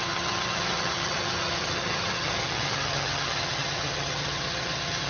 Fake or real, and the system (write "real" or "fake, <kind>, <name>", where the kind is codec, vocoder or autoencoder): fake, vocoder, HiFi-GAN